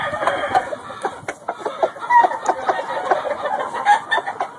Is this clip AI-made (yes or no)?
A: no